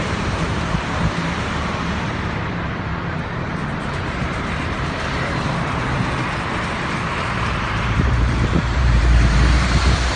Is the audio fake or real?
fake